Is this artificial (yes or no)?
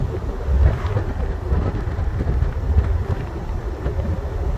no